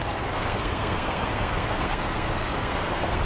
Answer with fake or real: fake